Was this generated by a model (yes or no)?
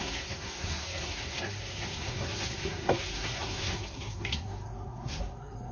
yes